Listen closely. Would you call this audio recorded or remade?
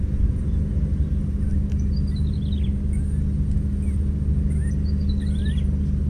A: recorded